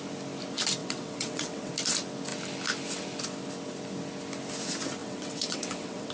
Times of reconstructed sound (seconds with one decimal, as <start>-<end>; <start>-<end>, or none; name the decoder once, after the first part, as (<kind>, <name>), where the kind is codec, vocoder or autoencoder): 0.8-1.7 (vocoder, WaveNeXt); 5.0-6.1